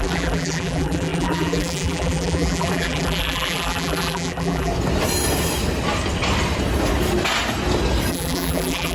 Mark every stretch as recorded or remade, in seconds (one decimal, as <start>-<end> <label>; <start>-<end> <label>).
0.0-4.7 remade; 4.7-8.1 recorded; 8.1-8.9 remade